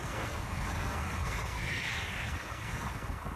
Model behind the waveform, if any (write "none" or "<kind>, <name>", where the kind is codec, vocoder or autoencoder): codec, SNAC